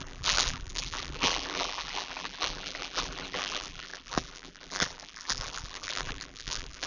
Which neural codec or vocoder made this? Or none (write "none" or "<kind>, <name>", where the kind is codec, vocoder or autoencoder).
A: vocoder, BigVGAN v2